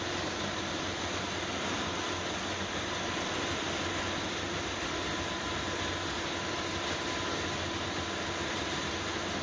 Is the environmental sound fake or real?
real